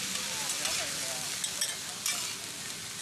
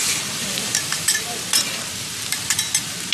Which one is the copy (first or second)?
second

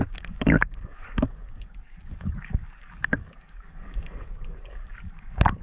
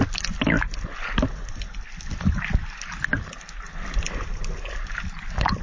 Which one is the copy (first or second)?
first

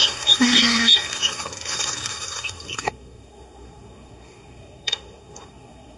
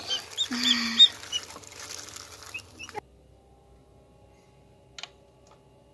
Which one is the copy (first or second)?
first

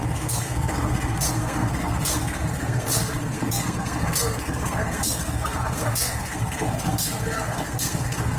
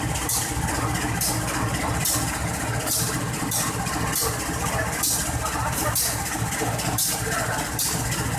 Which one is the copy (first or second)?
first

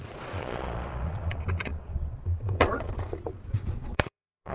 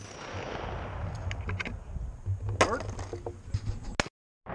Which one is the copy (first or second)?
first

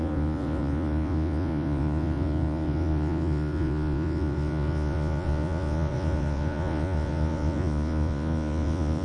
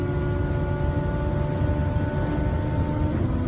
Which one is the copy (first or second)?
first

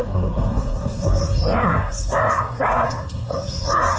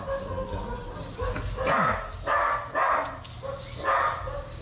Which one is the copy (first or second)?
first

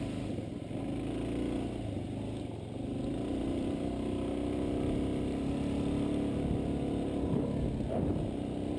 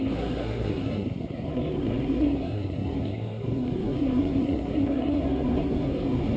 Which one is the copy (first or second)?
second